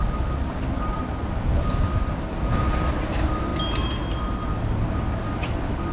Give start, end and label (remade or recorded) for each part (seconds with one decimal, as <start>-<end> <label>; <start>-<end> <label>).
0.0-5.9 recorded

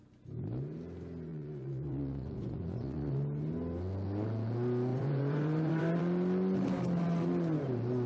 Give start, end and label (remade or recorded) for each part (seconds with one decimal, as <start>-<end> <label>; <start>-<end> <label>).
0.0-1.3 recorded; 1.3-3.1 remade; 3.1-4.9 recorded; 4.9-6.0 remade; 6.0-8.1 recorded

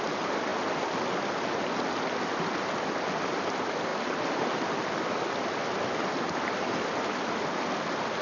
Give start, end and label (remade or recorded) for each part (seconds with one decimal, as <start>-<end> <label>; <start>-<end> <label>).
0.0-8.2 recorded